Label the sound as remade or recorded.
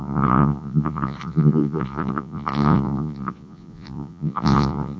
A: remade